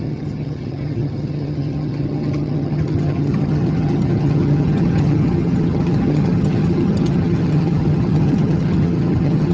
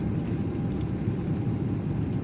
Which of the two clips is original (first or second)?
second